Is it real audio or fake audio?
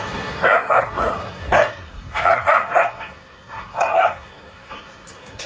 fake